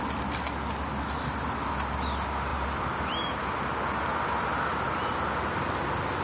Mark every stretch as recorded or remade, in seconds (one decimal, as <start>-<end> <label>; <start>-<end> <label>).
0.0-6.2 recorded